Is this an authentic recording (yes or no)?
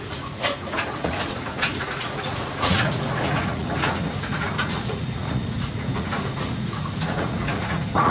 no